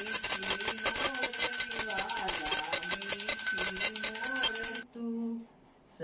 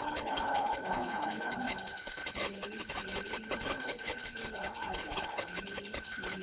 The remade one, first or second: second